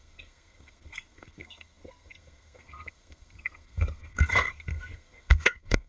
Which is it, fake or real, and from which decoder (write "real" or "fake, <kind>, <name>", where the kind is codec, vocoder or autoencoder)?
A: fake, codec, SNAC